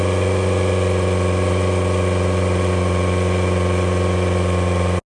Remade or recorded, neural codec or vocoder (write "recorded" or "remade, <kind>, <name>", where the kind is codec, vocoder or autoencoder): recorded